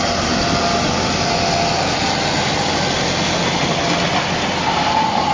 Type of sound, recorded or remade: recorded